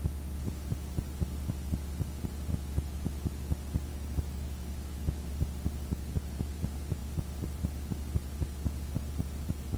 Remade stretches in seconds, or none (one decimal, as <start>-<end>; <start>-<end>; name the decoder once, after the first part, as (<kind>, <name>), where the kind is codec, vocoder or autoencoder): 2.5-3.1 (autoencoder, DAC-VAE); 3.9-5.3; 5.9-6.6